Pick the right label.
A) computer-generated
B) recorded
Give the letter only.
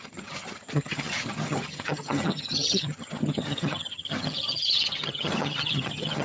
A